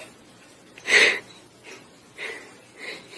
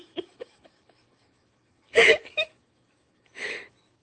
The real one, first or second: first